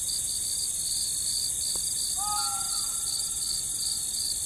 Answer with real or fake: real